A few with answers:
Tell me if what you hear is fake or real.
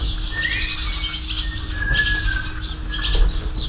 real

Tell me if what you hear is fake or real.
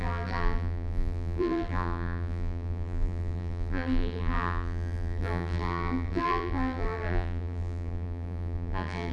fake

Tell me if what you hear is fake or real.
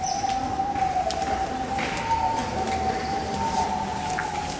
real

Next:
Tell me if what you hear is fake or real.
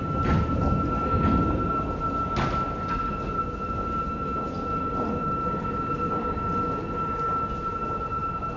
real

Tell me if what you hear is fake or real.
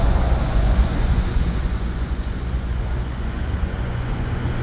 fake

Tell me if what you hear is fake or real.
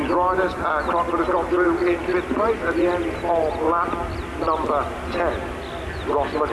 real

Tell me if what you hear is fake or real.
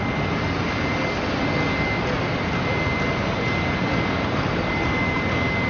real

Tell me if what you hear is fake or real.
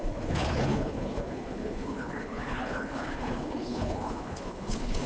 fake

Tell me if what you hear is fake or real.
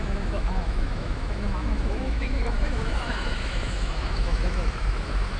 fake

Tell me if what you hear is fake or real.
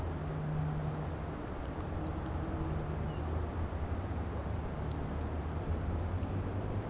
real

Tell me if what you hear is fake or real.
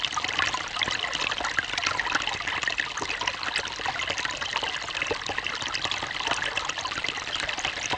real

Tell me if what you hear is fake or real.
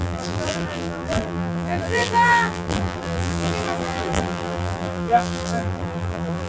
fake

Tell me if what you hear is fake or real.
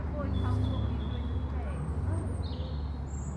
real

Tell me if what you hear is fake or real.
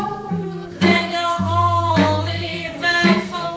fake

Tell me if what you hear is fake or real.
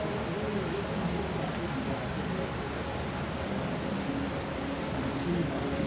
real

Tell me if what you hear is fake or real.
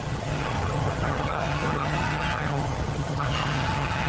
fake